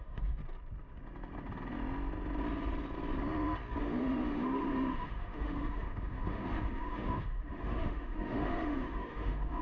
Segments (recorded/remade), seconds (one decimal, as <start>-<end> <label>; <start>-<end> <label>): 0.0-0.4 remade; 0.4-3.8 recorded; 3.8-9.6 remade